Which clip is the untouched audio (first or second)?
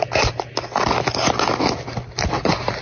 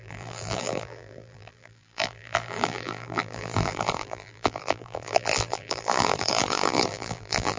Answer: first